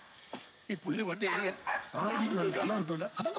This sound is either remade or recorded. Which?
remade